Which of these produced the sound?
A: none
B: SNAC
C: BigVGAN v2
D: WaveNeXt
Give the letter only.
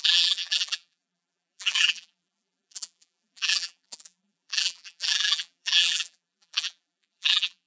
C